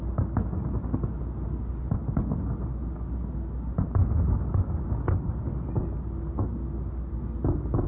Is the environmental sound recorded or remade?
recorded